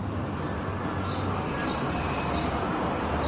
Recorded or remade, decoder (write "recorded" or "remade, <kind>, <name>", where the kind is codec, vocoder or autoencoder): recorded